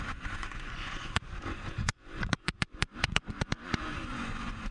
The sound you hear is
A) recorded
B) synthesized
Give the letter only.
B